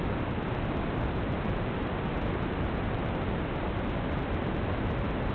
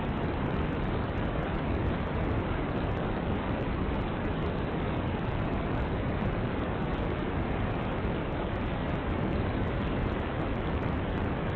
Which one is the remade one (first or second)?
second